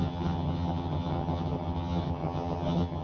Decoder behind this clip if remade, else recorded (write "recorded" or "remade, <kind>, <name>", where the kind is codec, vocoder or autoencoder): remade, vocoder, HiFi-GAN